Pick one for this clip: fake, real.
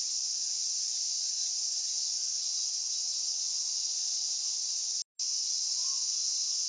real